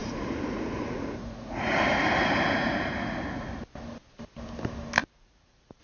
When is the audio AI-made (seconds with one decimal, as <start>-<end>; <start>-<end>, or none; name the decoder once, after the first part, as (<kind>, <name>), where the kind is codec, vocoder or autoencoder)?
0.0-3.5 (vocoder, Vocos); 5.0-5.8